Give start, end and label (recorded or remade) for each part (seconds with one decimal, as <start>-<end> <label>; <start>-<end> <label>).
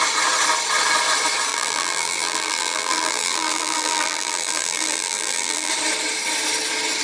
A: 0.0-1.5 recorded; 1.5-5.7 remade; 5.7-7.0 recorded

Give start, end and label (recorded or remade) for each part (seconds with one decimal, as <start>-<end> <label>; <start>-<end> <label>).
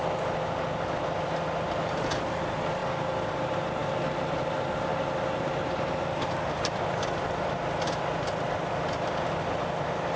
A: 0.0-10.2 recorded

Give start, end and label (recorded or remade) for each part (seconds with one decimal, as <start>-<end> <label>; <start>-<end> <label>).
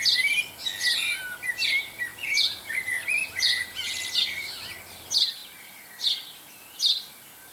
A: 0.0-2.1 recorded; 2.1-2.7 remade; 2.7-3.2 recorded; 3.2-3.9 remade; 3.9-7.5 recorded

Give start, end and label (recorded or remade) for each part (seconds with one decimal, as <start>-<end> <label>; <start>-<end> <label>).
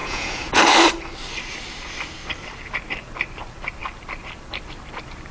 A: 0.0-0.6 remade; 0.6-5.3 recorded